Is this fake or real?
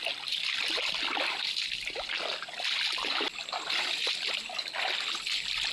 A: real